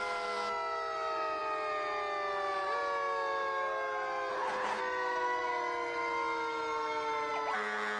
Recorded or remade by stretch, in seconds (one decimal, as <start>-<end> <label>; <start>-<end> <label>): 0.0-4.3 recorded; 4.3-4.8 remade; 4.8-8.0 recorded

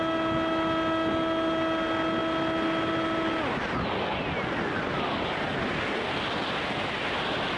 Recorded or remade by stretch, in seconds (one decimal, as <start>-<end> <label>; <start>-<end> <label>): 0.0-7.6 recorded

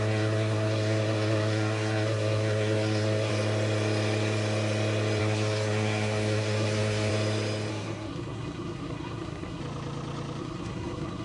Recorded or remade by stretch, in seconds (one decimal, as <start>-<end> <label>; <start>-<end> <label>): 0.0-3.3 remade; 3.3-5.2 recorded; 5.2-7.1 remade; 7.1-7.7 recorded; 7.7-9.6 remade; 9.6-10.4 recorded; 10.4-11.2 remade

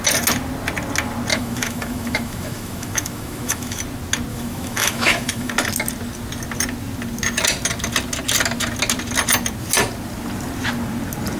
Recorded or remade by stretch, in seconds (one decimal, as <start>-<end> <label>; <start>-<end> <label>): 0.0-1.3 recorded; 1.3-3.8 remade; 3.8-4.3 recorded; 4.3-5.5 remade; 5.5-11.4 recorded